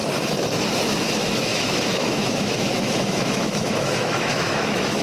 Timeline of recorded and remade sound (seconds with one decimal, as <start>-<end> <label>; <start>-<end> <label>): 0.0-0.7 recorded; 0.7-5.0 remade